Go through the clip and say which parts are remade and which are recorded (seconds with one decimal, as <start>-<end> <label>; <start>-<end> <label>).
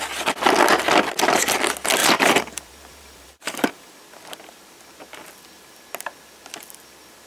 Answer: 0.0-2.0 recorded; 2.0-3.9 remade; 3.9-7.3 recorded